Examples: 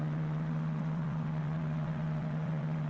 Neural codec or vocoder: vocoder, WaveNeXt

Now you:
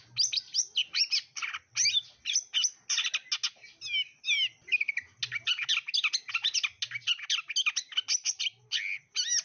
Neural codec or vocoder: none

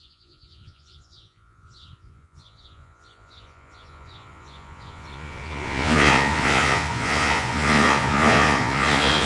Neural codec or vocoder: vocoder, Vocos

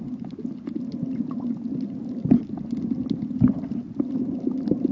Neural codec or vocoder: none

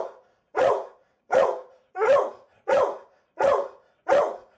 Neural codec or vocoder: vocoder, Vocos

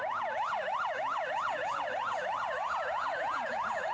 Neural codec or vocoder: vocoder, Vocos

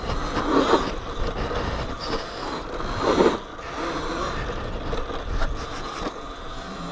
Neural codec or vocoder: none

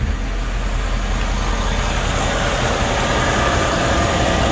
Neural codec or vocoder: none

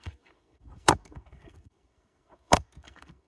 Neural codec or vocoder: codec, SNAC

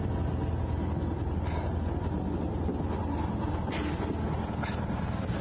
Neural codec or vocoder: none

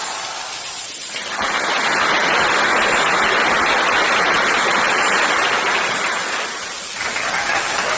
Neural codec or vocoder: none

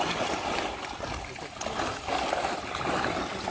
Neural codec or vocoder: none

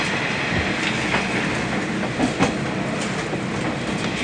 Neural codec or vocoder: none